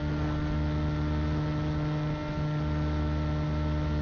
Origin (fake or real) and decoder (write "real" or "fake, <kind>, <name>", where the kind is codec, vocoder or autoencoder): real